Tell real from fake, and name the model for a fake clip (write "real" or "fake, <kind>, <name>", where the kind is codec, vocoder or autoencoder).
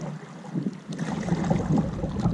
real